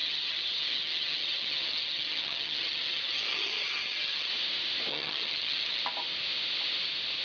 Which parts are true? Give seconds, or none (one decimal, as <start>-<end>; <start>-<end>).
4.3-4.9; 5.8-7.2